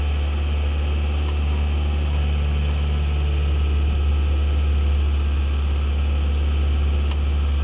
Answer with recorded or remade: recorded